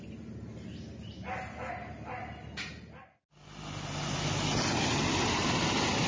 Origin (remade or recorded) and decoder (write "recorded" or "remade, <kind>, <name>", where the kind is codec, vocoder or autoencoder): recorded